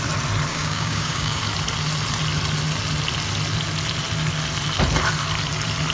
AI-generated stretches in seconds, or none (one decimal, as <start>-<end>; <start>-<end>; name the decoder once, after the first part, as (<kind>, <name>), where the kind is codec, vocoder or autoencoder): 0.5-1.4 (codec, DAC)